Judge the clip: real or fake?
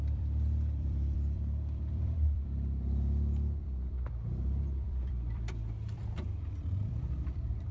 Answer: fake